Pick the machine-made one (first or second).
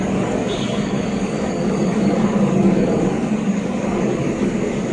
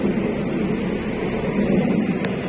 first